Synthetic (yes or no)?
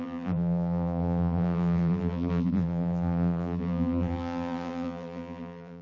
yes